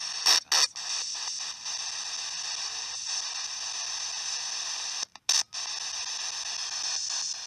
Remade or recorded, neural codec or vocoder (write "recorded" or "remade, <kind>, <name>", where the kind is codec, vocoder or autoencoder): recorded